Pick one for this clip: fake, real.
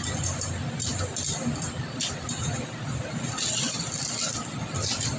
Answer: real